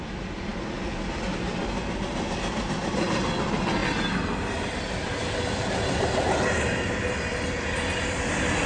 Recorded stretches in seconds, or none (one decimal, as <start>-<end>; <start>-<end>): 0.0-8.7